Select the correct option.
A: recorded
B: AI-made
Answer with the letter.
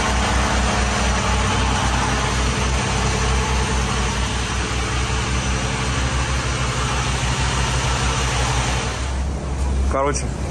A